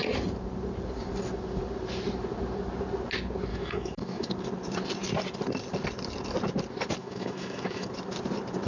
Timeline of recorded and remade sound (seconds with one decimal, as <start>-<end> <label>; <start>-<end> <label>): 0.0-3.5 recorded; 3.5-4.3 remade; 4.3-7.0 recorded; 7.0-7.9 remade; 7.9-8.7 recorded